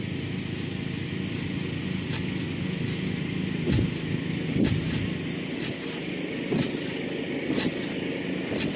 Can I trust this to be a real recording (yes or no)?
yes